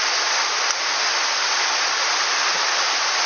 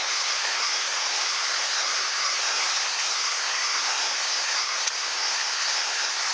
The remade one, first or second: second